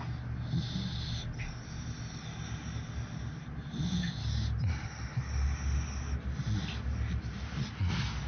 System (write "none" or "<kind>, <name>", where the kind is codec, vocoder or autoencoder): none